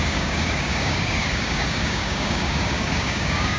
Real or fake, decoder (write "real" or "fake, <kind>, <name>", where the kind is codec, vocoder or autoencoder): fake, codec, DAC